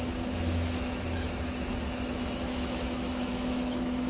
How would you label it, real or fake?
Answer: fake